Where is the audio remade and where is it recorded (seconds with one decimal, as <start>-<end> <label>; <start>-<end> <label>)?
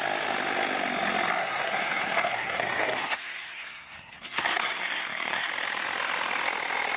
0.0-1.4 recorded; 1.4-5.5 remade; 5.5-7.0 recorded